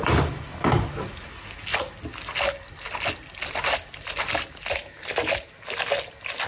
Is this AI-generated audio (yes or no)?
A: no